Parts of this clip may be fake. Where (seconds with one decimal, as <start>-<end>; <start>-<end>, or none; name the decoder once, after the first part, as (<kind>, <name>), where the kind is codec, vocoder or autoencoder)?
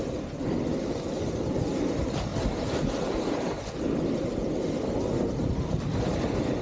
2.3-3.7 (vocoder, BigVGAN v2)